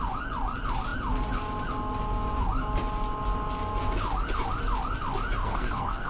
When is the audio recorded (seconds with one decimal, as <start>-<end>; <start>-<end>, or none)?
0.0-5.4